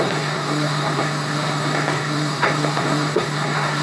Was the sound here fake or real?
fake